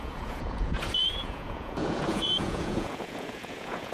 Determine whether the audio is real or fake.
fake